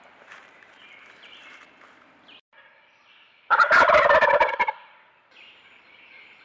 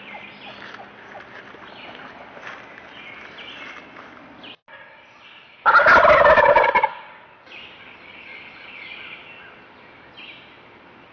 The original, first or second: second